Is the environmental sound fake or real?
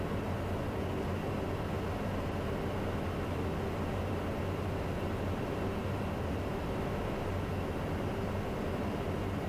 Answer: real